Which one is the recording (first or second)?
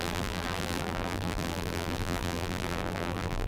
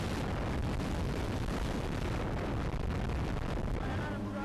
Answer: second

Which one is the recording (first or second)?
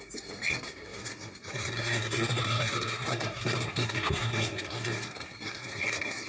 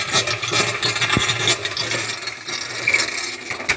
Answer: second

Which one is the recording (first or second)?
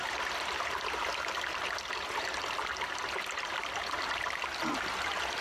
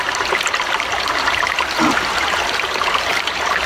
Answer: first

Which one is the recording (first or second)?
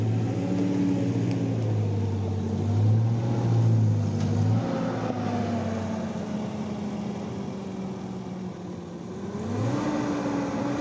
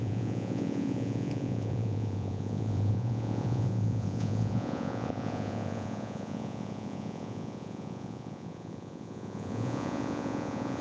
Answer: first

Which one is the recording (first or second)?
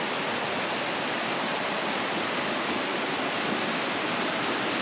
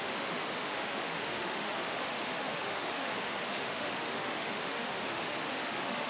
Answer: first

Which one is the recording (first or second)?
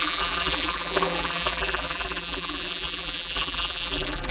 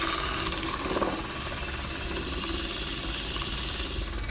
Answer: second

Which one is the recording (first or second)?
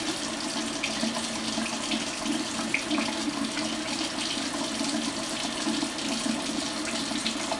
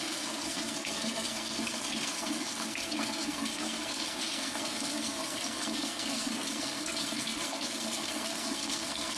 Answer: first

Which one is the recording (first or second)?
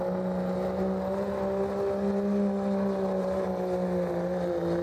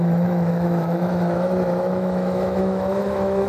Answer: first